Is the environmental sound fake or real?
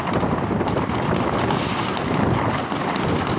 real